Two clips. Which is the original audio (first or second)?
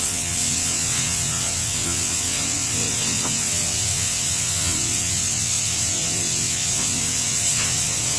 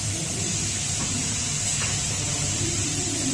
second